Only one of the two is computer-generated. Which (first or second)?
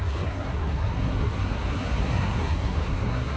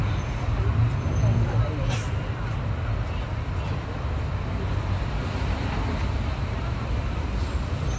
first